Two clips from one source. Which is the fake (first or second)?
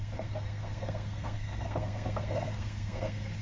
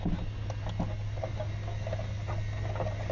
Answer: first